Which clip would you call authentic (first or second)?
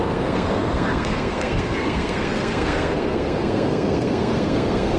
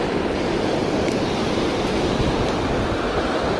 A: second